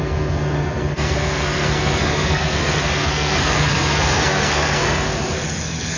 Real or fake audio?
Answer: fake